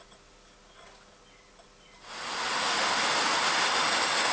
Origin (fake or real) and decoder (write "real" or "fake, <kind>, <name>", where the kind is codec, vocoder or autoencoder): real